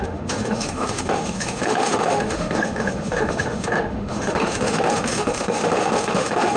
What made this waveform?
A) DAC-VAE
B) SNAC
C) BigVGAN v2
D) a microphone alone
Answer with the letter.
A